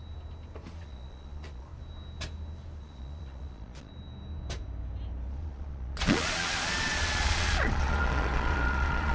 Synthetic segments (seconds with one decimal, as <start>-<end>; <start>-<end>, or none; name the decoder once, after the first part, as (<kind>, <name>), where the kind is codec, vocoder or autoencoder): 0.7-1.7 (vocoder, Vocos); 2.8-3.9; 5.3-9.1